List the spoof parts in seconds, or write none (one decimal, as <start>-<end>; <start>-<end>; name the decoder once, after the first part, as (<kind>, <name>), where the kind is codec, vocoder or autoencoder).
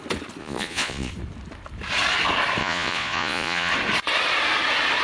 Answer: 0.4-1.1 (vocoder, Vocos); 2.6-3.7